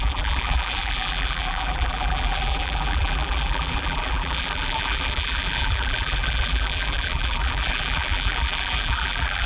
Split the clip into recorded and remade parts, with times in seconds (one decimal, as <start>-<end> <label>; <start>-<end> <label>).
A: 0.0-9.5 remade